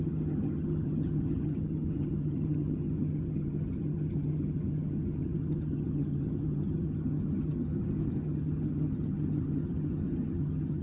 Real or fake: fake